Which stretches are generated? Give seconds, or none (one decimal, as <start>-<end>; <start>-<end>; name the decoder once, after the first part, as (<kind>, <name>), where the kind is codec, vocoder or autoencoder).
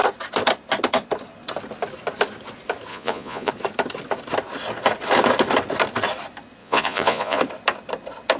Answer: 2.9-3.5 (vocoder, Vocos); 6.6-7.4